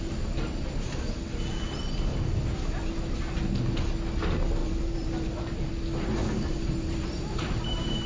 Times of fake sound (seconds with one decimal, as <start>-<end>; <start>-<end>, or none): 2.1-2.9; 4.6-5.7; 6.2-8.1